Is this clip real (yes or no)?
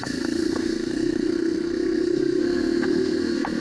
no